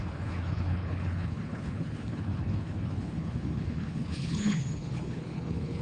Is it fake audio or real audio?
fake